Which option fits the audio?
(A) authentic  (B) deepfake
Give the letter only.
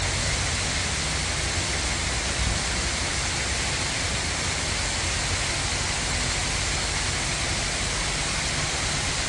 A